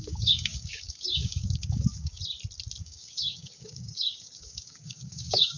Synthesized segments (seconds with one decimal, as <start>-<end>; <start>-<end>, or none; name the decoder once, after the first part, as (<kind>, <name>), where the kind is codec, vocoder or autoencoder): 0.0-2.2 (codec, DAC); 2.8-5.6